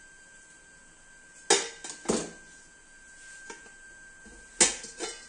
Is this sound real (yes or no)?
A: yes